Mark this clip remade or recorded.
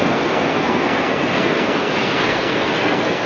remade